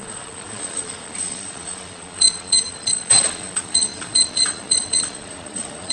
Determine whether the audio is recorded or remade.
remade